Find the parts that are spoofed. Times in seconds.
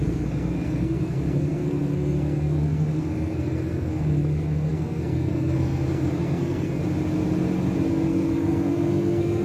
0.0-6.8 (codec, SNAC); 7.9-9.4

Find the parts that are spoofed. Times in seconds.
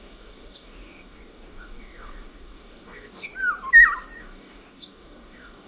0.0-3.3 (codec, DAC); 4.2-5.7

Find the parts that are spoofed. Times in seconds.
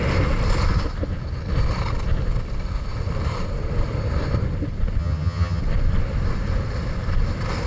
5.0-5.6 (vocoder, HiFi-GAN)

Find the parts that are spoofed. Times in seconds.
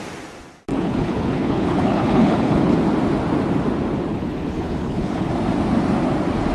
0.7-2.8 (codec, HILCodec); 4.1-5.3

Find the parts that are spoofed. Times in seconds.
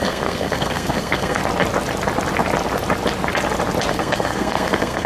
0.0-1.4 (codec, SNAC); 3.9-5.1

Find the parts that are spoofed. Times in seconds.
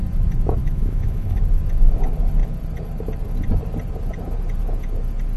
0.6-1.4 (autoencoder, DAC-VAE)